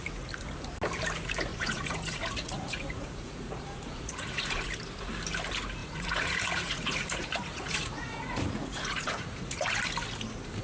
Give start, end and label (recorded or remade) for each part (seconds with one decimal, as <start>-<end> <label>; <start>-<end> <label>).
0.0-1.5 recorded; 1.5-4.7 remade; 4.7-5.8 recorded; 5.8-9.7 remade; 9.7-10.6 recorded